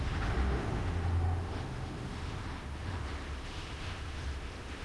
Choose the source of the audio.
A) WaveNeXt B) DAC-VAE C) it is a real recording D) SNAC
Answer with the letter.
B